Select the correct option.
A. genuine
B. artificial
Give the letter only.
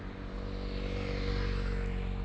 A